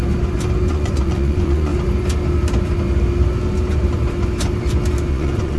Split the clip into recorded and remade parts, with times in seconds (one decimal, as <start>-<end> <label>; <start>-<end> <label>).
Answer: 0.0-0.7 recorded; 0.7-1.7 remade; 1.7-5.1 recorded; 5.1-5.6 remade